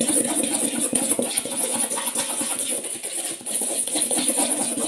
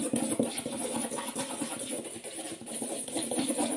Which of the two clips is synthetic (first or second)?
first